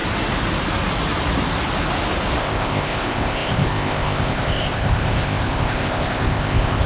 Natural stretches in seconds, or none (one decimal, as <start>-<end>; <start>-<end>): 0.0-2.4